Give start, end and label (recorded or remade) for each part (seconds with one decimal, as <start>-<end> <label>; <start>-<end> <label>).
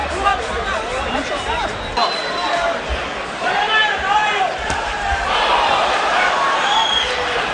0.0-1.7 remade; 1.7-2.2 recorded; 2.2-6.7 remade; 6.7-7.5 recorded